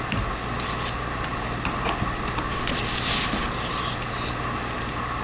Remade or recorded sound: recorded